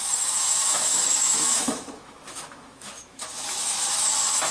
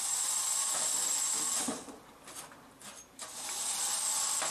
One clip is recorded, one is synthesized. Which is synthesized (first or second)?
first